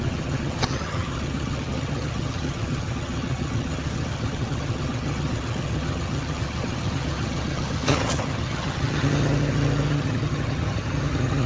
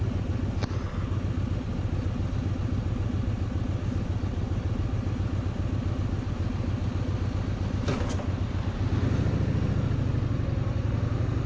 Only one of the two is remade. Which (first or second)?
first